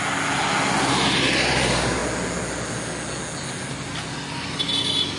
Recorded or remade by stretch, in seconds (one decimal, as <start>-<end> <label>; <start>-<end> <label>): 0.0-5.2 recorded